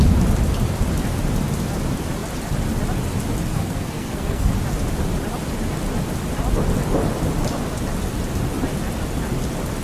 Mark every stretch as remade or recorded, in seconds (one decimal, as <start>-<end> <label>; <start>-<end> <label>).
0.0-3.5 recorded; 3.5-4.5 remade; 4.5-9.8 recorded